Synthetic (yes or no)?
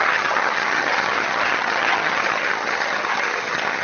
yes